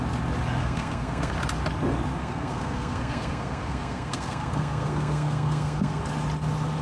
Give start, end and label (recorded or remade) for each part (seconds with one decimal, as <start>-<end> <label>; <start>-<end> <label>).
0.0-0.6 recorded; 0.6-1.3 remade; 1.3-2.2 recorded; 2.2-6.0 remade; 6.0-6.8 recorded